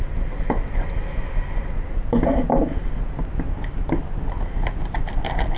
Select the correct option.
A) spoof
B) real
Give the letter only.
B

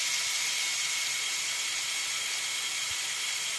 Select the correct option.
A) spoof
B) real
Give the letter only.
A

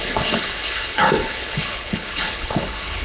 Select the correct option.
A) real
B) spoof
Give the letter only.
B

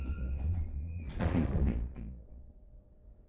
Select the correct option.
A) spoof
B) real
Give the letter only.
A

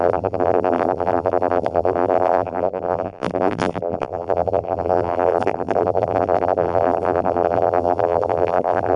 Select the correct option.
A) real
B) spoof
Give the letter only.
B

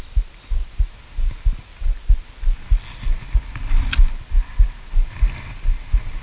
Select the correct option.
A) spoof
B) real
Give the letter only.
B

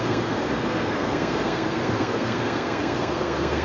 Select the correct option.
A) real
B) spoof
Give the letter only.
B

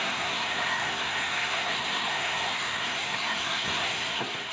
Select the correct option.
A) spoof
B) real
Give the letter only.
A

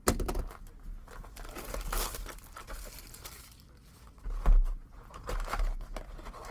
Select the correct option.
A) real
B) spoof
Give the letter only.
A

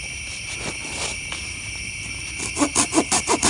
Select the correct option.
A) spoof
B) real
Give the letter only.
B